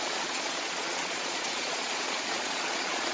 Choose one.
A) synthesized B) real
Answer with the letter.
A